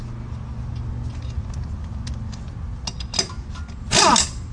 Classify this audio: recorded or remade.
recorded